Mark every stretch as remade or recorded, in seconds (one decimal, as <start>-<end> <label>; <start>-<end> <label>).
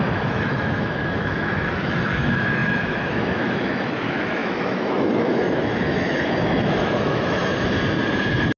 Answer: 0.0-7.4 remade; 7.4-8.6 recorded